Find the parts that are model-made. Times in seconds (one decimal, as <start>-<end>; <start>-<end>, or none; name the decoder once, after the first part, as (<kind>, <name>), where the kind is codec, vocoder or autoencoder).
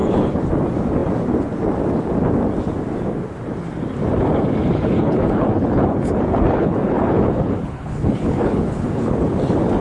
0.0-0.5 (codec, HILCodec); 4.7-9.3